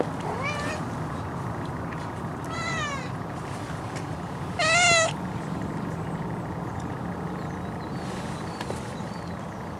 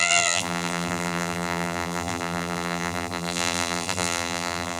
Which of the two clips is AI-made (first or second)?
second